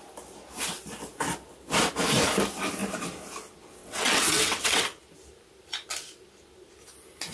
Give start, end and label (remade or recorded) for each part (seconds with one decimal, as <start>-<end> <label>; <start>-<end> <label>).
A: 0.0-3.8 recorded; 3.8-4.8 remade; 4.8-7.3 recorded